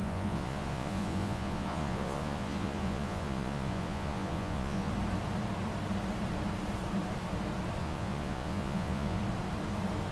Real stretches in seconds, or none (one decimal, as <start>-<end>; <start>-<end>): 4.9-7.8; 9.2-10.1